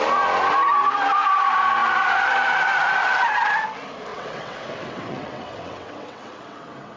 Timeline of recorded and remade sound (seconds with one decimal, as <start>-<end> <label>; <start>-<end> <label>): 0.0-4.1 recorded; 4.1-7.0 remade